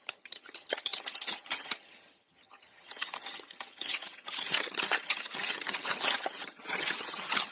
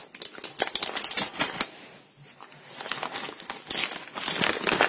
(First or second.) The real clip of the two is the second